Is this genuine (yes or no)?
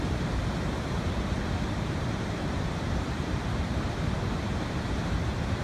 no